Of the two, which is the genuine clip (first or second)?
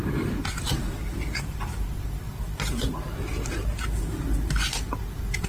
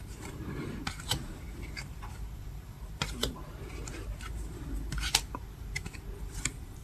first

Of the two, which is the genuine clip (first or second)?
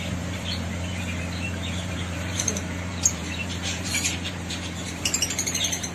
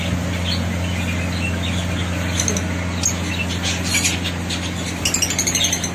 second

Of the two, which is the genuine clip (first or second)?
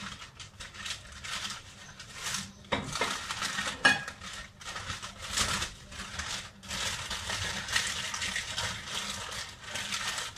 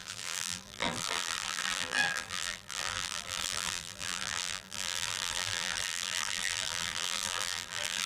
first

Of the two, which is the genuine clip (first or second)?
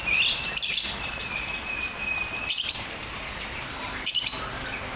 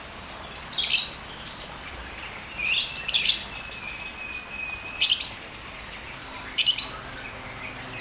second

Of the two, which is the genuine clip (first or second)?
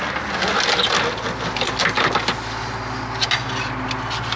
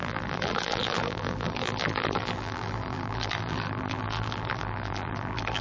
first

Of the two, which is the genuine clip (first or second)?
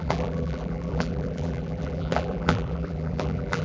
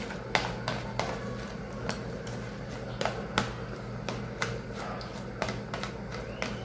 second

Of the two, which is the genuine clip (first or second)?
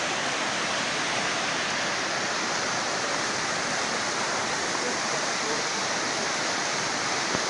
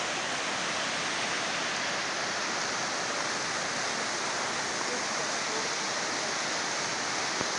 second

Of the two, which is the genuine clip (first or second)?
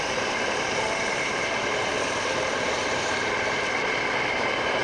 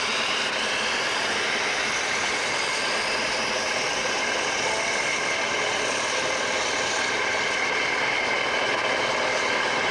second